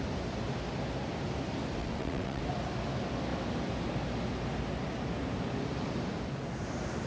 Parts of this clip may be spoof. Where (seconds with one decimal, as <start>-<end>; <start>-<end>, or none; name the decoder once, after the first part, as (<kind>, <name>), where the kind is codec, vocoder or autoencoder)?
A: 1.8-2.4 (vocoder, WaveNeXt)